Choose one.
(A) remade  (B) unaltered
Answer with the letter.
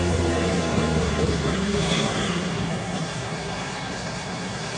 A